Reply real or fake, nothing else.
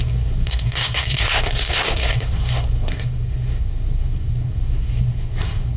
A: fake